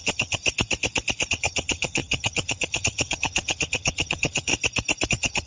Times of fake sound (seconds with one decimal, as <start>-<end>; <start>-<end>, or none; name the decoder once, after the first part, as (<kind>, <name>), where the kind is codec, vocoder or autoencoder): 0.0-0.4 (vocoder, HiFi-GAN); 1.3-4.5; 5.1-5.5